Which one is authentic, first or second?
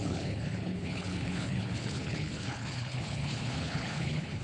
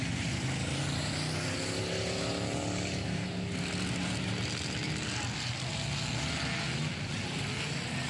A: second